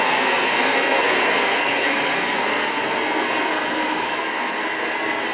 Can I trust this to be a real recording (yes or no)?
no